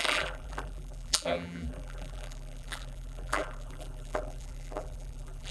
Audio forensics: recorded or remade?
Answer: remade